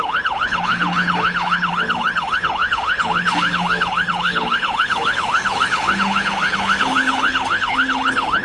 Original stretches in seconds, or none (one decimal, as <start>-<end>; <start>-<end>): none